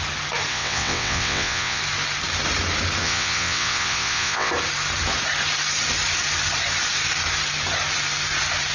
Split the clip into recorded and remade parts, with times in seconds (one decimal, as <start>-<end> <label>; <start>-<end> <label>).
0.0-0.5 recorded; 0.5-1.8 remade; 1.8-3.0 recorded; 3.0-4.5 remade; 4.5-8.7 recorded